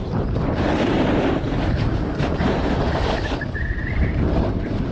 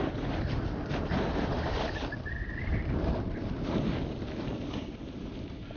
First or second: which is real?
second